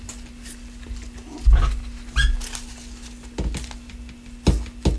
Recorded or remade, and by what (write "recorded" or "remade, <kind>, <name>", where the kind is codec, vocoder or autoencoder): recorded